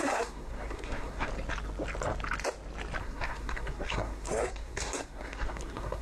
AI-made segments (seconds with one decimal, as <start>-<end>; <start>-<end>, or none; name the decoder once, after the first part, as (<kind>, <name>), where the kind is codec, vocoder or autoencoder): 0.0-1.3 (codec, SNAC); 3.0-6.0